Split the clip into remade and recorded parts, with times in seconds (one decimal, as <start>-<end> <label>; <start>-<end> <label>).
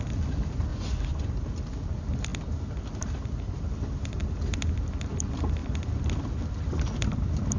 0.0-0.7 recorded; 0.7-1.3 remade; 1.3-7.6 recorded